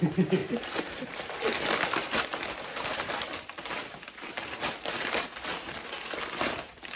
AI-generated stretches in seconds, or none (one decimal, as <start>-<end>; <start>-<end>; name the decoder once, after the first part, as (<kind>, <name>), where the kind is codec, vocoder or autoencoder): 0.4-1.3 (vocoder, BigVGAN v2); 2.0-6.2